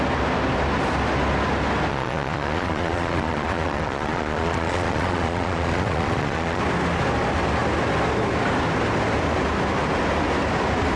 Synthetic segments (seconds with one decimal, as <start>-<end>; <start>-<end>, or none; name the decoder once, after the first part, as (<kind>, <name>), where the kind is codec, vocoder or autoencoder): 1.9-6.6 (vocoder, Vocos)